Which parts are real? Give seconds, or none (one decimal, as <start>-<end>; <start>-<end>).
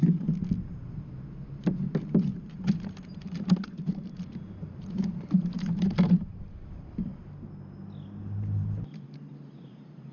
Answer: 0.0-1.8; 7.1-8.2